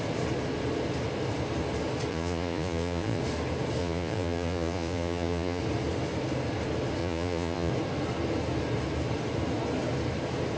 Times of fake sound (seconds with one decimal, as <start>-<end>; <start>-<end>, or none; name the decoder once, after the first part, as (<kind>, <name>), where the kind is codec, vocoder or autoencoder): 2.1-3.2 (vocoder, Vocos); 3.8-5.6; 7.0-7.7